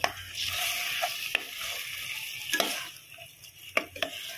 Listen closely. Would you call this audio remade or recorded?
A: recorded